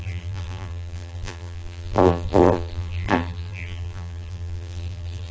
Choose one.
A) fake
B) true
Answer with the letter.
A